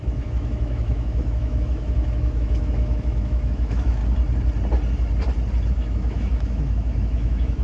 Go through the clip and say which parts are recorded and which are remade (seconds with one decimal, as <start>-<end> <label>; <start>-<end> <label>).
0.0-4.0 remade; 4.0-5.7 recorded; 5.7-7.6 remade